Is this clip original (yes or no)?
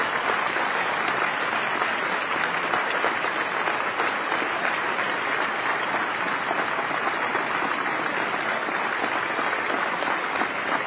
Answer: yes